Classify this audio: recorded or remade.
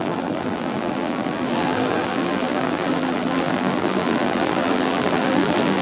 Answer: remade